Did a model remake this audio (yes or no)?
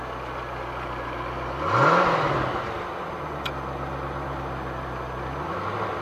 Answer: no